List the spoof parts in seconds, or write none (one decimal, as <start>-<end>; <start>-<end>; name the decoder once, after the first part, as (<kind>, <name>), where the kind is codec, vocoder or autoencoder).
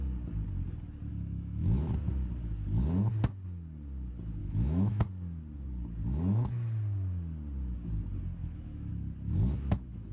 1.1-1.9 (autoencoder, DAC-VAE); 4.4-5.0; 8.4-8.9